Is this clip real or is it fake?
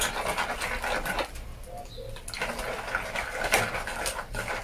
real